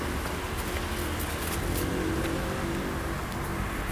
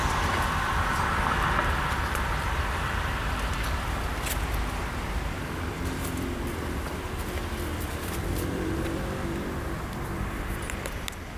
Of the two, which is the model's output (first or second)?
second